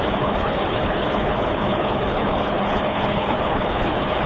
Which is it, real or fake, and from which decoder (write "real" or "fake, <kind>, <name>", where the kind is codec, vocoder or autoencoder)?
fake, codec, HILCodec